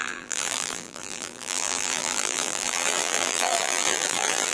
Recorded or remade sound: remade